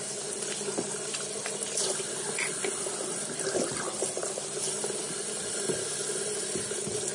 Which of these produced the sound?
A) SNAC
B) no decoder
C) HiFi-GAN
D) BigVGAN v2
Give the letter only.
B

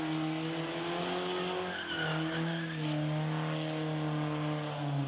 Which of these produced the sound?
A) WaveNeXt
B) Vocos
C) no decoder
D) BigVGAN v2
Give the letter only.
C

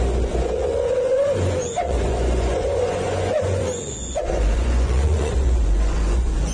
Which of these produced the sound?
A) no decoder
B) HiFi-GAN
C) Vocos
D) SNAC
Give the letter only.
C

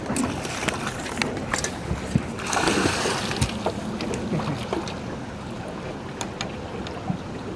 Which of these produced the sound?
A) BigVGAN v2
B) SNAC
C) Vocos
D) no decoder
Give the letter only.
D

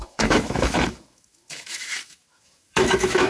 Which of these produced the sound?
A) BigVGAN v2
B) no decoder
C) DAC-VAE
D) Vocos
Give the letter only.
C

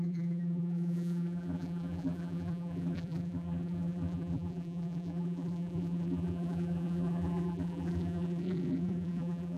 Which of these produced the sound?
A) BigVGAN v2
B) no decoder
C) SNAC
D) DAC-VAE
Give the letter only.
A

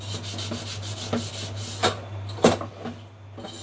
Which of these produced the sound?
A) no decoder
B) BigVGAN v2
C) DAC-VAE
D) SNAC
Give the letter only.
A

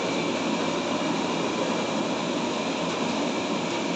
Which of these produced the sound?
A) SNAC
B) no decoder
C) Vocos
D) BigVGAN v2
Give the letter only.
B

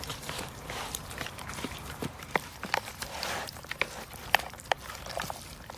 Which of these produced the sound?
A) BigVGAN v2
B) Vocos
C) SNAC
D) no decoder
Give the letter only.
A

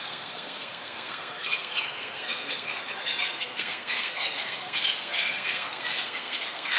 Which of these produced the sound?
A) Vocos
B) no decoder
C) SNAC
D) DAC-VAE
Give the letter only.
C